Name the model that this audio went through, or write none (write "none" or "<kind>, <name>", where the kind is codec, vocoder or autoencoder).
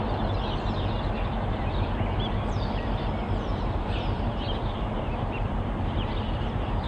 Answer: vocoder, BigVGAN v2